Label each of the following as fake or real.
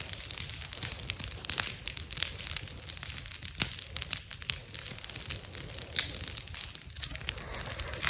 real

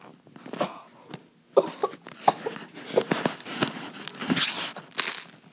real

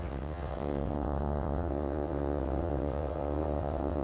fake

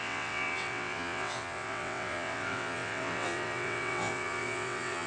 fake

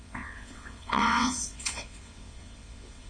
fake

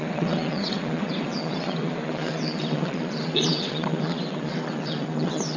fake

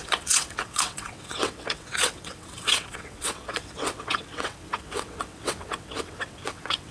fake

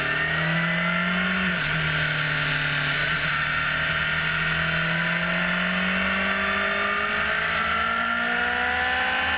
real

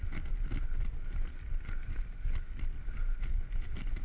real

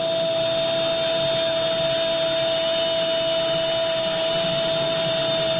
real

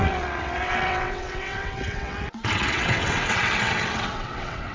fake